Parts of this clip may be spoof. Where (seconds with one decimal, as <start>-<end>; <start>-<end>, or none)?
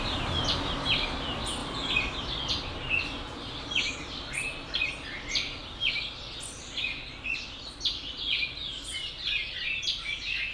none